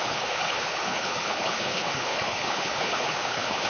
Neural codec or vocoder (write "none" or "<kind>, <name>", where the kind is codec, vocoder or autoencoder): codec, HILCodec